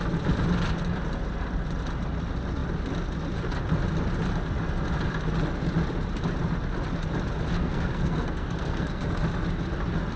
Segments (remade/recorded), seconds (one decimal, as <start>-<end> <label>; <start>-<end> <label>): 0.0-7.6 recorded; 7.6-9.0 remade; 9.0-10.2 recorded